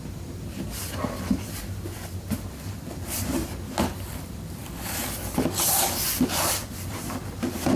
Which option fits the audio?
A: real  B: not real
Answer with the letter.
A